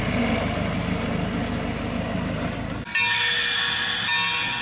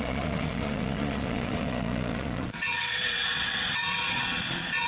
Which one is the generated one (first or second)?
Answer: second